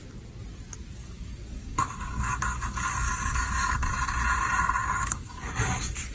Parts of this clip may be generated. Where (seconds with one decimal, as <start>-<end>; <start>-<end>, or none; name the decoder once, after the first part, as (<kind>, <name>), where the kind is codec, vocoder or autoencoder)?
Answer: 1.0-3.9 (codec, DAC); 4.8-6.1